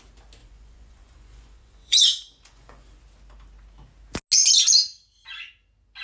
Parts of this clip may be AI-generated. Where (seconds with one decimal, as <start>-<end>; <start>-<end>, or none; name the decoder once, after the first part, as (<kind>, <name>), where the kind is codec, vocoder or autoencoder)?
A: 0.4-3.0 (vocoder, Vocos)